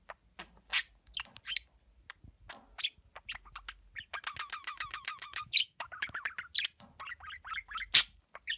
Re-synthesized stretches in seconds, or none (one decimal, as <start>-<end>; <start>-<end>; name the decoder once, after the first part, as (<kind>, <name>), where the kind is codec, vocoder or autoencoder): 4.6-6.2 (autoencoder, DAC-VAE)